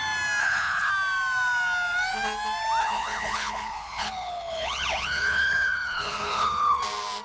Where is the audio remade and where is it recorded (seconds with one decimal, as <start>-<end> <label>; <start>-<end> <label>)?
0.0-0.4 recorded; 0.4-0.9 remade; 0.9-2.8 recorded; 2.8-6.8 remade; 6.8-7.2 recorded